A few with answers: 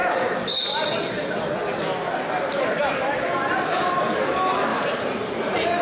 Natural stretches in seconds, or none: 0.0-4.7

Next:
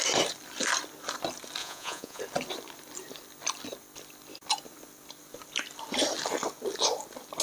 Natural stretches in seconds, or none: 0.0-1.6; 2.2-7.4

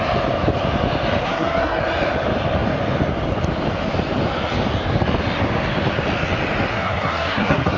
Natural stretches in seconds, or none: 0.0-1.2; 1.8-6.7